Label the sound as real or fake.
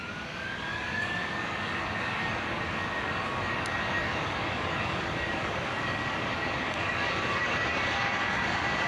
fake